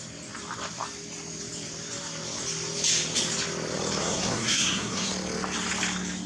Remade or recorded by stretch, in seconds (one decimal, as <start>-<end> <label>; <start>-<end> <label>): 0.0-4.0 recorded; 4.0-5.1 remade; 5.1-6.3 recorded